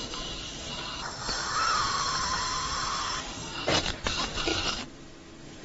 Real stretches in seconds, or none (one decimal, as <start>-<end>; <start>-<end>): 1.4-3.2; 4.5-5.6